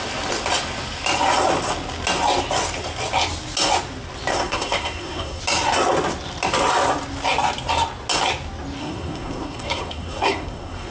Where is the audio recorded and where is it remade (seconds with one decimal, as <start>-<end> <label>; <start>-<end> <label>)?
0.0-4.3 recorded; 4.3-5.4 remade; 5.4-8.8 recorded; 8.8-10.9 remade